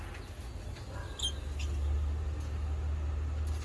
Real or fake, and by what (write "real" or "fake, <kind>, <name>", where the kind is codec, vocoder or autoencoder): real